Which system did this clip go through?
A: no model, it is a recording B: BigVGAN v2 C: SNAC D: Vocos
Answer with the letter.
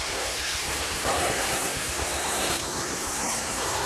C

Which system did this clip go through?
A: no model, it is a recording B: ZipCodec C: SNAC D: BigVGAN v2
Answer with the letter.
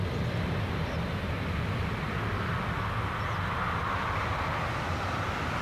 A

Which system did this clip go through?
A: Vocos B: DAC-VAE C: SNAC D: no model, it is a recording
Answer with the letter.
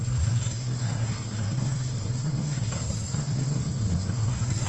C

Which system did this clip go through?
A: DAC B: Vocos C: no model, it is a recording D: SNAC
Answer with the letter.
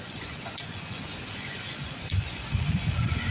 B